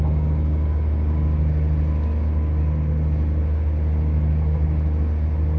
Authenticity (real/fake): real